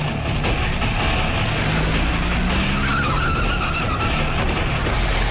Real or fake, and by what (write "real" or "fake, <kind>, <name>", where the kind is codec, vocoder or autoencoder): real